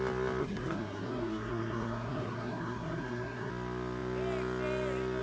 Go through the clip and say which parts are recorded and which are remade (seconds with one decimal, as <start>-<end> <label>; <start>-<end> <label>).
0.0-0.4 recorded; 0.4-3.5 remade; 3.5-5.2 recorded